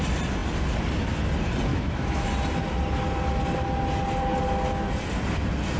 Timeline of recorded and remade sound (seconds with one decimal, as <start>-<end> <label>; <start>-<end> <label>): 0.0-1.7 recorded; 1.7-2.3 remade; 2.3-5.8 recorded